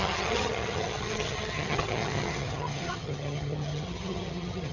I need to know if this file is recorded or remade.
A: remade